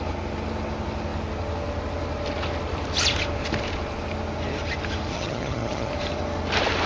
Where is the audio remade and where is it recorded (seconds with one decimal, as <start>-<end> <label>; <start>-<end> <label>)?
0.0-5.1 recorded; 5.1-5.9 remade; 5.9-6.9 recorded